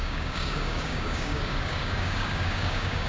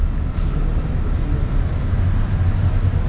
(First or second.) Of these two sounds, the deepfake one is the first